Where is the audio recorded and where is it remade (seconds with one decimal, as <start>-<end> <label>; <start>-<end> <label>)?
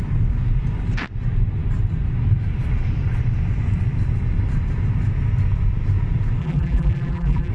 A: 0.0-6.4 recorded; 6.4-7.5 remade